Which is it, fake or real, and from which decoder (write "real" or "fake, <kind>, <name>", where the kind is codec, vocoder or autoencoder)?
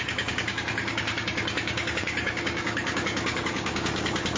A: fake, codec, DAC